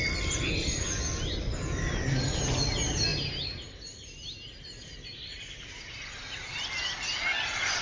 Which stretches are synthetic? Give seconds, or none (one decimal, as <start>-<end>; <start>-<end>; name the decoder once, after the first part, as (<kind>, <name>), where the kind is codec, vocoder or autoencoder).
none